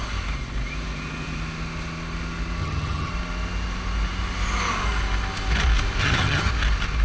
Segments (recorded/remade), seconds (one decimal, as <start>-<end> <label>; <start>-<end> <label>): 0.0-2.6 recorded; 2.6-3.1 remade; 3.1-6.0 recorded; 6.0-6.5 remade; 6.5-7.0 recorded